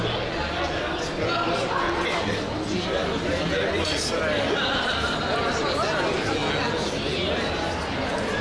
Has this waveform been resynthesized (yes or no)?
no